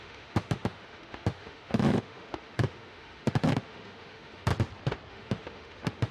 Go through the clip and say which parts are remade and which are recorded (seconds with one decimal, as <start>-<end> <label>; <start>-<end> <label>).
0.0-4.5 remade; 4.5-5.1 recorded; 5.1-6.1 remade